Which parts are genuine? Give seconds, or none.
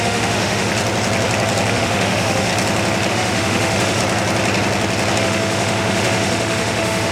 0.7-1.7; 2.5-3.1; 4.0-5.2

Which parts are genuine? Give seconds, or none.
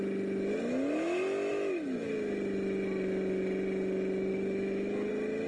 0.0-1.5; 2.1-4.3; 5.1-5.5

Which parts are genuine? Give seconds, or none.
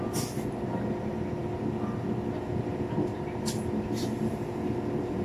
0.0-5.2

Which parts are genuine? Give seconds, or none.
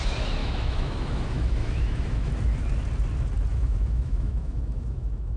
0.0-0.4; 2.3-3.5